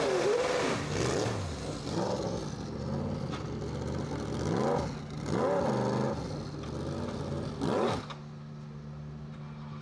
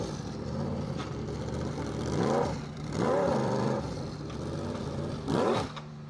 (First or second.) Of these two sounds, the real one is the first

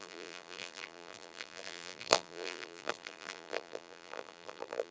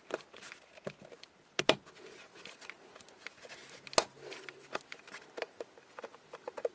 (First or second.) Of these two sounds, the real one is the second